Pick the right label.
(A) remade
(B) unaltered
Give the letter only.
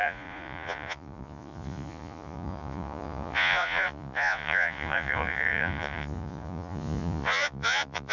A